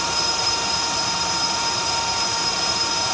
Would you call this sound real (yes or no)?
no